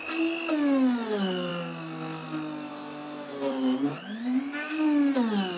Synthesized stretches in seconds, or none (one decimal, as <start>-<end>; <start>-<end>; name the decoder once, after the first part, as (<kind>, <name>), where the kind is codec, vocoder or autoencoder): 3.3-4.4 (vocoder, BigVGAN v2)